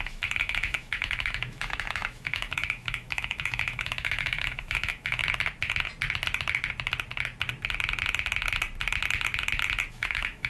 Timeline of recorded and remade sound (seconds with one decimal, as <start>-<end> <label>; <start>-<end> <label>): 0.0-5.2 remade; 5.2-9.9 recorded; 9.9-10.5 remade